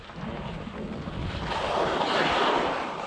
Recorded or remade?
recorded